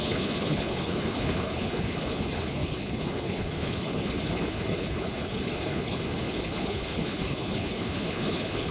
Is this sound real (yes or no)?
no